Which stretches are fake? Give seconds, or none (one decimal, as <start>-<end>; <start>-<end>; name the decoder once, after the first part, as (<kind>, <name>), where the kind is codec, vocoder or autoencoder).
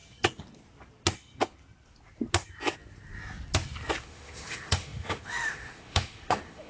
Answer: 4.0-6.7 (autoencoder, DAC-VAE)